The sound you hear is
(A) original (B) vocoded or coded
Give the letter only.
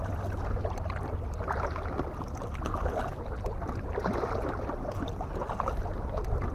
A